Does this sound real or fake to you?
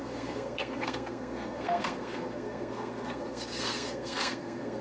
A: fake